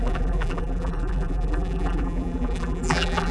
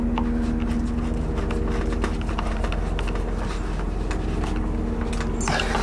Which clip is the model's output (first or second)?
first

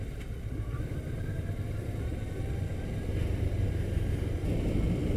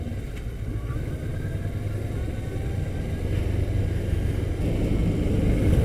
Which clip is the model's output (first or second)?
first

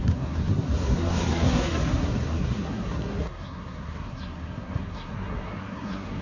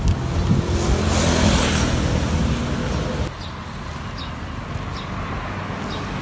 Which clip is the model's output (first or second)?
first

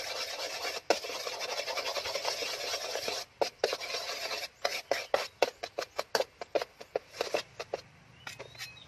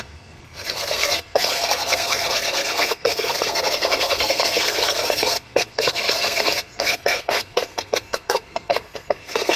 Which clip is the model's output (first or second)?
second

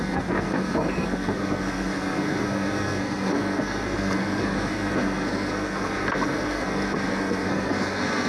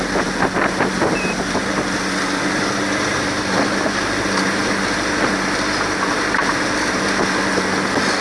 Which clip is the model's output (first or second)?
first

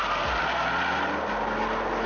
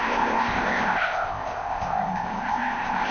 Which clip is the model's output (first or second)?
second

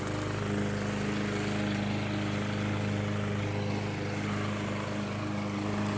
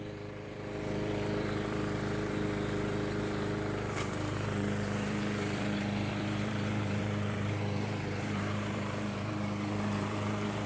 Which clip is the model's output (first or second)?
second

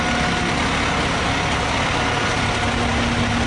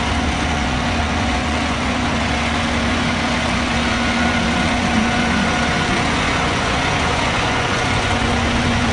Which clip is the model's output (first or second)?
second